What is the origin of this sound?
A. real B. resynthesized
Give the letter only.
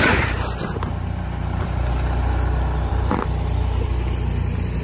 A